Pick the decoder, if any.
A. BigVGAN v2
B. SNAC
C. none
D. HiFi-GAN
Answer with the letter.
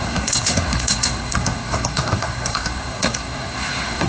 B